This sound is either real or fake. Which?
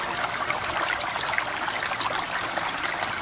real